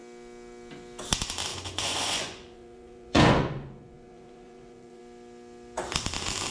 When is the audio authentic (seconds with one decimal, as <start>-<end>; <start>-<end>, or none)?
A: 0.0-1.5; 5.0-6.5